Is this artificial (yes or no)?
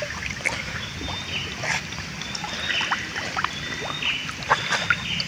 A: no